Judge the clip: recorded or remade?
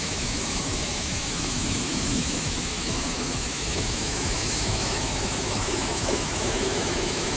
remade